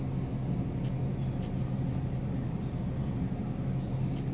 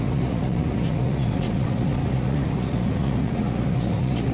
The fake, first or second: second